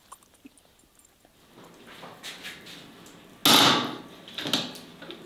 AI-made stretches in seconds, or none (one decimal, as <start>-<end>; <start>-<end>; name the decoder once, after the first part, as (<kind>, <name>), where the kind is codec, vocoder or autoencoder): none